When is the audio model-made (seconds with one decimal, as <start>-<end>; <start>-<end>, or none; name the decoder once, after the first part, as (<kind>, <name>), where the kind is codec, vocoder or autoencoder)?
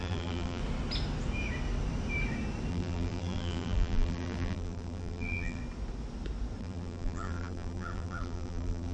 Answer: 0.0-0.6 (vocoder, BigVGAN v2); 2.7-5.6; 6.6-8.9